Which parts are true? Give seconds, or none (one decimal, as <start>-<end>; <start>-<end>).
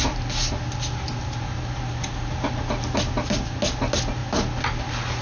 0.0-5.2